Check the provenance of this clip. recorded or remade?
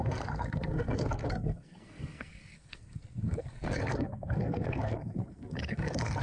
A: remade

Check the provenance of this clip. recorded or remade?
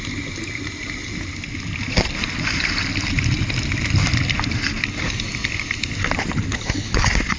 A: recorded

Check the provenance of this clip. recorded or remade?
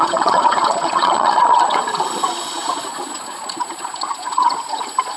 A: remade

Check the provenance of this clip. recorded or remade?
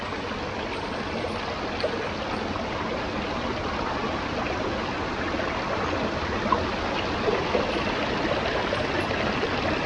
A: recorded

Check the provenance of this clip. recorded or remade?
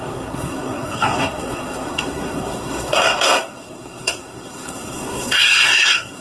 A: remade